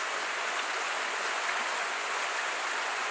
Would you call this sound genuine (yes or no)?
no